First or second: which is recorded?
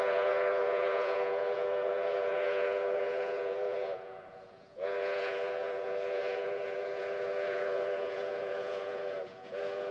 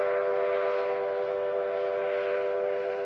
second